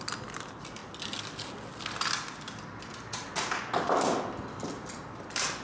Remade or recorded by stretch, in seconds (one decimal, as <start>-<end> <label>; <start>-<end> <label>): 0.0-5.6 recorded